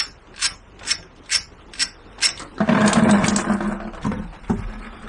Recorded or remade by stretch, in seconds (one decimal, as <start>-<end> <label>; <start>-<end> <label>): 0.0-5.1 recorded